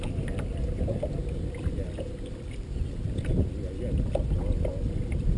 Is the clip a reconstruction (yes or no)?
no